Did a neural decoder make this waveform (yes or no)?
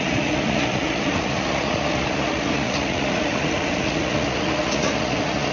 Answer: yes